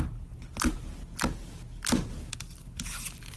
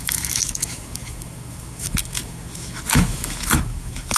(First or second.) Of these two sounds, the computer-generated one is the second